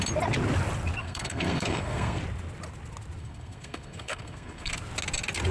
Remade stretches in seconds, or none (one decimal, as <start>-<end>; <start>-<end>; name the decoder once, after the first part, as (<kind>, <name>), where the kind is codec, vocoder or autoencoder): 1.0-2.2 (codec, SNAC); 3.2-4.7